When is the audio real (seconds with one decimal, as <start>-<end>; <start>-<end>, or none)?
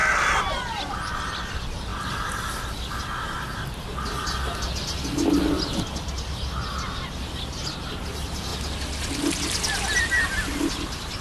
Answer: 0.0-11.2